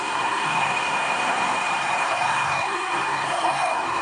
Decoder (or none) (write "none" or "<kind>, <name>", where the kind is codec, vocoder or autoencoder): codec, SNAC